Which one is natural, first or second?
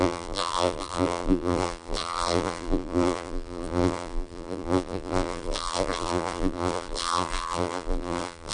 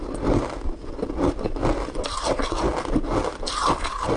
second